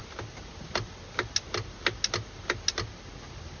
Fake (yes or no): no